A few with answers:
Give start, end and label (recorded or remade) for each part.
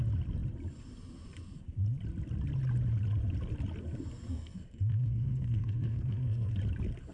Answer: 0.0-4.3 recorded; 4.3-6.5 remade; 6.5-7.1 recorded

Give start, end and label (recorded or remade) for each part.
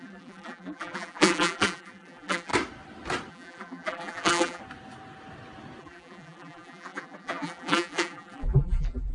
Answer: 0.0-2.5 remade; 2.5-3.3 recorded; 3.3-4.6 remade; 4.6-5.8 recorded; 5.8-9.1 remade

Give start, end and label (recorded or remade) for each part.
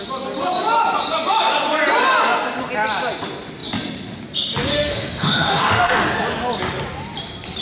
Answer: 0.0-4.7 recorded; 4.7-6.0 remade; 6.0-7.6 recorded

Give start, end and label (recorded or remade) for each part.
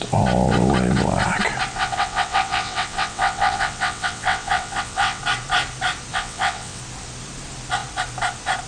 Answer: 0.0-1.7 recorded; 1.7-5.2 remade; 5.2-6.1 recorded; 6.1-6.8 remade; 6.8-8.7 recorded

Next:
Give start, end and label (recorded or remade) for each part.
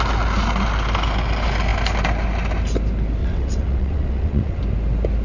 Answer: 0.0-3.2 recorded; 3.2-4.6 remade; 4.6-5.2 recorded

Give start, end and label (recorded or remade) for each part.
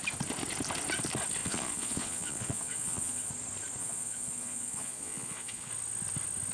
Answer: 0.0-1.4 recorded; 1.4-3.3 remade; 3.3-3.8 recorded; 3.8-5.7 remade; 5.7-6.5 recorded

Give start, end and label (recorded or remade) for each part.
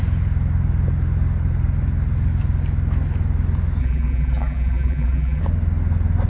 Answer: 0.0-3.8 recorded; 3.8-5.4 remade; 5.4-6.3 recorded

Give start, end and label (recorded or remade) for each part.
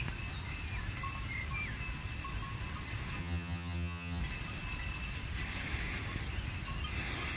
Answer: 0.0-3.2 recorded; 3.2-4.2 remade; 4.2-7.4 recorded